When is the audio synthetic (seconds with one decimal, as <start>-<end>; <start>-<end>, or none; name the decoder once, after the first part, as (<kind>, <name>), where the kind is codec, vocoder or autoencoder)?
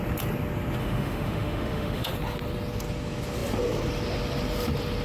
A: 0.8-2.1 (autoencoder, DAC-VAE)